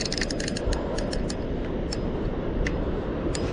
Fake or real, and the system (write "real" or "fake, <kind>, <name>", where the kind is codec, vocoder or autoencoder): real